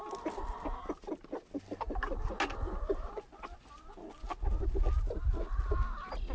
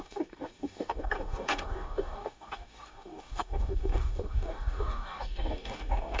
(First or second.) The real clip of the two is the first